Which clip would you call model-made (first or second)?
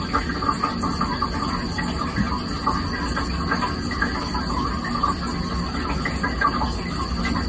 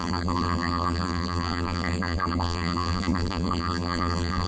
second